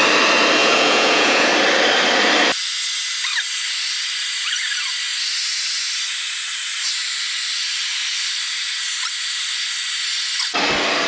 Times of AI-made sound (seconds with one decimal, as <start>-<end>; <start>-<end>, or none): 0.6-1.5